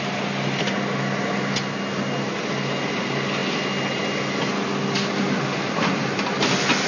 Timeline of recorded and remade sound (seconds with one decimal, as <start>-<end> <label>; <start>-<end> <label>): 0.0-6.9 recorded

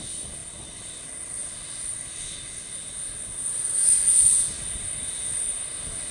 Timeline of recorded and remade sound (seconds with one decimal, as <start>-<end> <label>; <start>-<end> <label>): 0.0-6.1 recorded

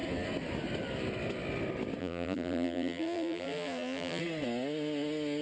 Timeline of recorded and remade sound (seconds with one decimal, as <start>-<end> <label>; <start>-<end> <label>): 0.0-2.0 recorded; 2.0-4.2 remade; 4.2-5.4 recorded